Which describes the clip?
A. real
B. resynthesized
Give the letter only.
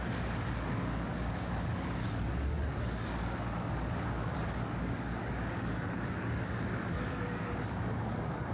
B